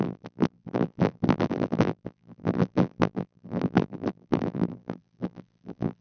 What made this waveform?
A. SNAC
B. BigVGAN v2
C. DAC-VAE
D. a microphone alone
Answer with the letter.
B